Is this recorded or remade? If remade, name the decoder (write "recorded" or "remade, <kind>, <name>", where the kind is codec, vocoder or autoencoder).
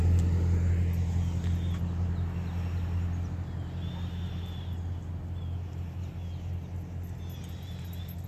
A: recorded